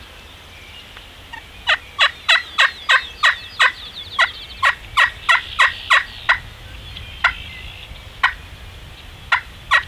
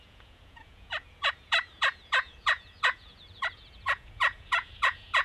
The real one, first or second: first